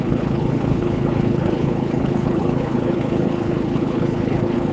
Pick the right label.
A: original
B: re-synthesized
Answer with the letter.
B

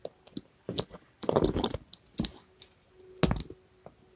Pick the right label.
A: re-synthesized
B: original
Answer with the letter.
B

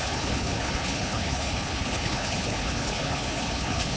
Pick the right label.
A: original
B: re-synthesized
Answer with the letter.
B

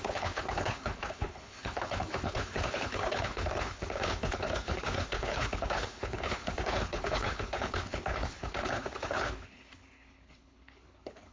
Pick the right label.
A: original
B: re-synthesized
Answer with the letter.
B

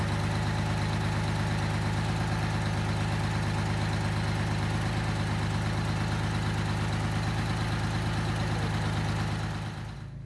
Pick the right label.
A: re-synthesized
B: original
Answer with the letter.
B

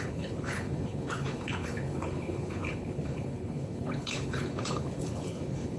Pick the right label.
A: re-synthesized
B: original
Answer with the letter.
A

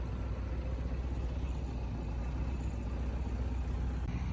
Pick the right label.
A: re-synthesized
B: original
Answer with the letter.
B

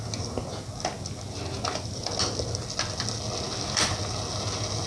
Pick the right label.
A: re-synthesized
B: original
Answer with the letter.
B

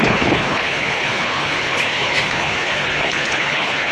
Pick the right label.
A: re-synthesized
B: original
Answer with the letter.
A